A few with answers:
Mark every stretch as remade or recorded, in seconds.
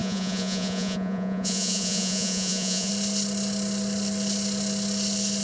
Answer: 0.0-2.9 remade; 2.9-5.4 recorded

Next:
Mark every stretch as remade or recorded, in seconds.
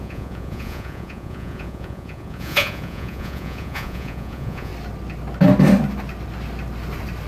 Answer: 0.0-4.7 remade; 4.7-7.3 recorded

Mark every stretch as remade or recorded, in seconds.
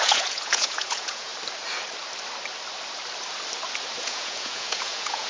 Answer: 0.0-1.3 remade; 1.3-4.0 recorded; 4.0-5.3 remade